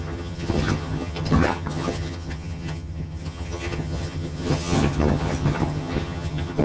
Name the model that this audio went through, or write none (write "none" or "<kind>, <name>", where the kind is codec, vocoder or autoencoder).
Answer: vocoder, HiFi-GAN